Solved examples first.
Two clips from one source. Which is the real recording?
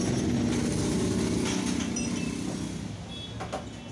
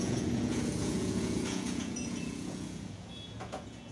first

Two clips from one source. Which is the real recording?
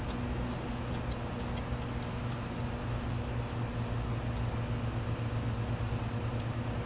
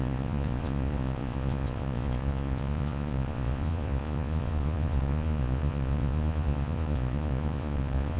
first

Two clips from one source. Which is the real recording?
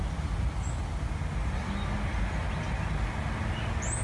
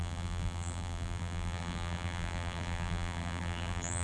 first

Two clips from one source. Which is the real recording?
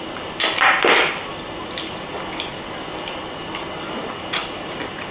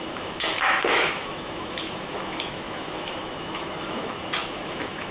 first